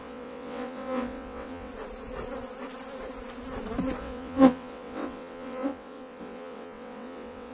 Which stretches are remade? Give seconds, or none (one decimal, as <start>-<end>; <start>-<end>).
0.0-1.7; 4.0-7.5